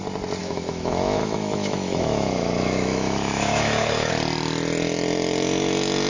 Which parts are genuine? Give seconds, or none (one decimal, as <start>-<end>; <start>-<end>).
0.0-0.4; 4.1-6.1